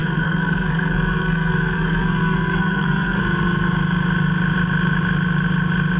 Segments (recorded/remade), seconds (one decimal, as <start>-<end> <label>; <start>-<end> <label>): 0.0-3.2 remade; 3.2-6.0 recorded